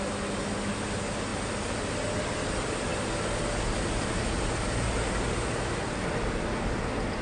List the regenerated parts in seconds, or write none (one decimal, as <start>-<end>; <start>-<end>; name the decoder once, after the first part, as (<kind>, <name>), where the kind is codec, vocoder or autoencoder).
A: none